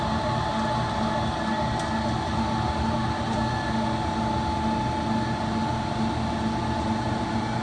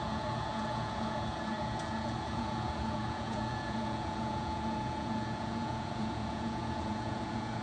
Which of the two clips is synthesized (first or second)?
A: second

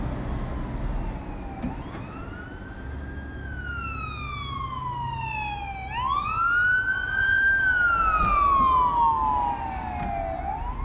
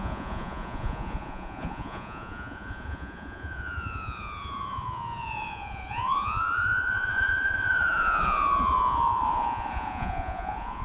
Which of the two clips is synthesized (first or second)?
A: second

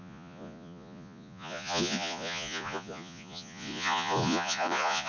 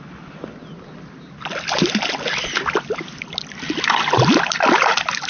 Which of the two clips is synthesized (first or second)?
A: first